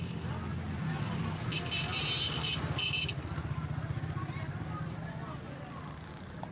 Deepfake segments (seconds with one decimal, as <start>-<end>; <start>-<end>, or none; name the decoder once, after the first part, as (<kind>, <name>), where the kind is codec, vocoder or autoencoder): none